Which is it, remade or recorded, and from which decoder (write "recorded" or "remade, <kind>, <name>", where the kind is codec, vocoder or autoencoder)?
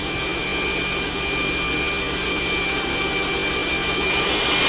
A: recorded